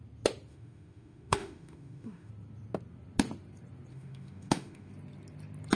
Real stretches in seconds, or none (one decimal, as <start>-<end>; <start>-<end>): 0.0-0.5; 2.3-3.9; 4.9-5.8